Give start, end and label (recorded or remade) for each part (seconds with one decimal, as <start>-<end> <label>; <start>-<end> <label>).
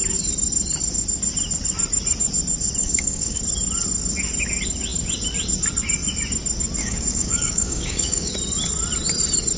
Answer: 0.0-2.8 recorded; 2.8-3.4 remade; 3.4-6.8 recorded; 6.8-8.3 remade; 8.3-9.6 recorded